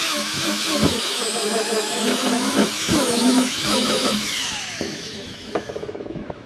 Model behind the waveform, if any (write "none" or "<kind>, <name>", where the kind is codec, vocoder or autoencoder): autoencoder, DAC-VAE